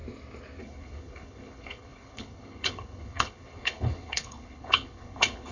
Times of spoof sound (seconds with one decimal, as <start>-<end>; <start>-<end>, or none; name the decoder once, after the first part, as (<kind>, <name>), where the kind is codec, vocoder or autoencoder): 0.6-5.5 (codec, HILCodec)